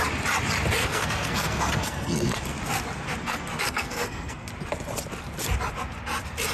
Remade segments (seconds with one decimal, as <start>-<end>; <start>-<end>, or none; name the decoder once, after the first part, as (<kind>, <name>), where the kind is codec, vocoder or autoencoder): 0.8-2.6 (codec, SNAC); 3.2-4.5